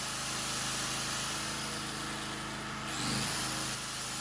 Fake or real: real